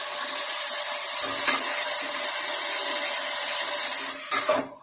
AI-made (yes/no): no